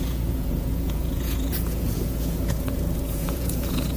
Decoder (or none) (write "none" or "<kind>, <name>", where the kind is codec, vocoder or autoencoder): vocoder, Vocos